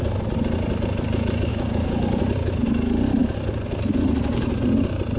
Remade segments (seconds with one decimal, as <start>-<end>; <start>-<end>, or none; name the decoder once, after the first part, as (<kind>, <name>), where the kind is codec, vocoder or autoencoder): 1.5-2.2 (codec, DAC)